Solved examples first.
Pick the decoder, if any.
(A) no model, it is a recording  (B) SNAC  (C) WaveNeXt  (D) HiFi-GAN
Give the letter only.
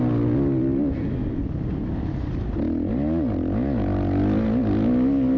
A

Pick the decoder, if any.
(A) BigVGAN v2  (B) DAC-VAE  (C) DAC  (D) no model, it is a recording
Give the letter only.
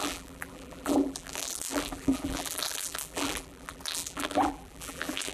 A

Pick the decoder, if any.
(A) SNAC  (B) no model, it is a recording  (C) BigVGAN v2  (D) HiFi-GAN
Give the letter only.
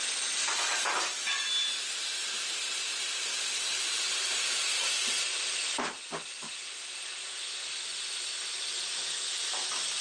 B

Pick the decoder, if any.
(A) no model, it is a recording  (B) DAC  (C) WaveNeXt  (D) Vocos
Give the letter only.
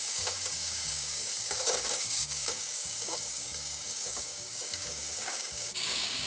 B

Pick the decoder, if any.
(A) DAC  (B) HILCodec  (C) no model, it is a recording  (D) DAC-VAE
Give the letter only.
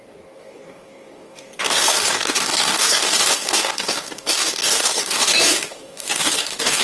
A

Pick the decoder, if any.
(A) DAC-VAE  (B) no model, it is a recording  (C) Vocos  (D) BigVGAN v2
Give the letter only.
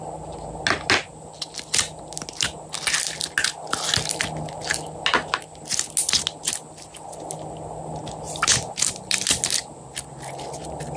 B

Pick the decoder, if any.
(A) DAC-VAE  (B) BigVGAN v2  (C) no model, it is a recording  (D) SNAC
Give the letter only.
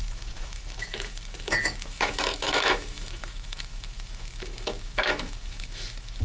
A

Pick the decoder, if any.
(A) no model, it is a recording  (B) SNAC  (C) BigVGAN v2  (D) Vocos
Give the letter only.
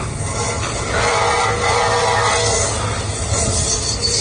A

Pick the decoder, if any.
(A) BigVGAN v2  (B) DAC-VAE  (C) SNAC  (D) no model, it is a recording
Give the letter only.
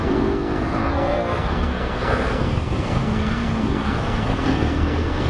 C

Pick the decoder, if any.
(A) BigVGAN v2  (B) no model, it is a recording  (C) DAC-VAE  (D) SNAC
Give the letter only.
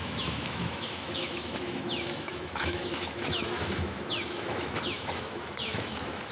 C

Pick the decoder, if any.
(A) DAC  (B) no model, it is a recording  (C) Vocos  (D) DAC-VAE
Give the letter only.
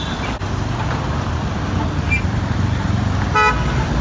B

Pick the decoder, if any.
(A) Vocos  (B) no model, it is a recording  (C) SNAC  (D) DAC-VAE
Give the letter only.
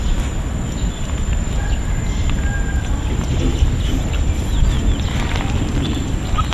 B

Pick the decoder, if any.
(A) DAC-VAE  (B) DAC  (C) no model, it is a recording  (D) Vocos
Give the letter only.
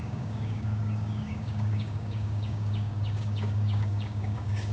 B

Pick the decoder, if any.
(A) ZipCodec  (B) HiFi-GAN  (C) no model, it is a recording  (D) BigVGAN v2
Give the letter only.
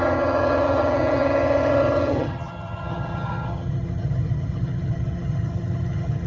B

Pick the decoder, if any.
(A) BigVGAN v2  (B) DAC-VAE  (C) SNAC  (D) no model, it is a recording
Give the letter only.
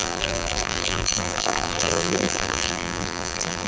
A